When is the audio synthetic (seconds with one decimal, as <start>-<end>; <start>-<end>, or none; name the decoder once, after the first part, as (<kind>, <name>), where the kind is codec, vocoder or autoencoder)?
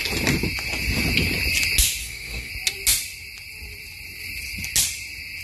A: 2.0-2.5 (codec, SNAC)